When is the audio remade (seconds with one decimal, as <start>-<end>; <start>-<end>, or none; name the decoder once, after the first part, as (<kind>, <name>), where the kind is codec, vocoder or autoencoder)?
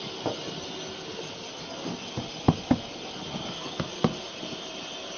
none